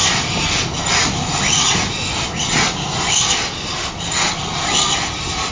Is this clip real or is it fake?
real